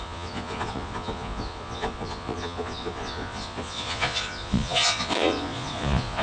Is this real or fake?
fake